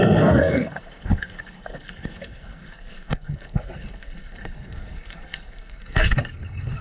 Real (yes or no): no